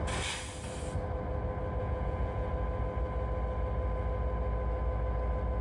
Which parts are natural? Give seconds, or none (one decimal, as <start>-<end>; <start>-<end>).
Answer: 0.0-1.8; 2.5-5.6